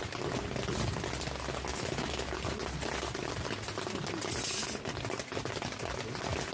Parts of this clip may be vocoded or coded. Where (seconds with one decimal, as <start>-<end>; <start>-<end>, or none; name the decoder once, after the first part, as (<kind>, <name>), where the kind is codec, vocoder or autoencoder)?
1.7-2.3 (autoencoder, DAC-VAE)